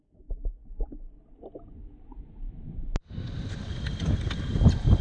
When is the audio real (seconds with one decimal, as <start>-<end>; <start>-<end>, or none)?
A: 0.0-5.0